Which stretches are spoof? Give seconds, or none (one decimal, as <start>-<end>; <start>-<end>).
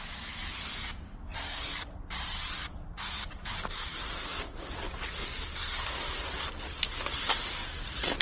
1.3-4.4; 7.6-8.2